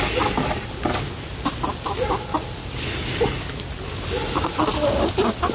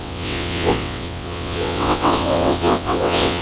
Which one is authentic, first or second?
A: first